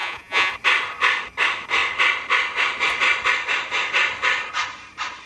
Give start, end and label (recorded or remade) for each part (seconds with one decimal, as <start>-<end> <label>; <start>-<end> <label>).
0.0-0.5 remade; 0.5-5.3 recorded